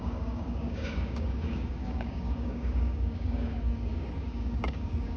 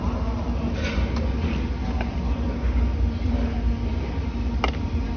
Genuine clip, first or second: second